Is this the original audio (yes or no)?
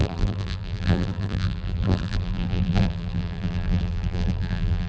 no